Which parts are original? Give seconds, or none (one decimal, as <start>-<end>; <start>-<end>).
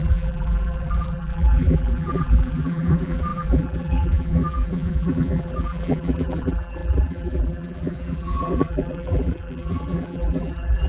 none